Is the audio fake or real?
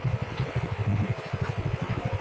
fake